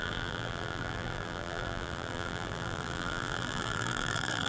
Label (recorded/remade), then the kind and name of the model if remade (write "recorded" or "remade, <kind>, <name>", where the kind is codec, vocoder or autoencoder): remade, vocoder, BigVGAN v2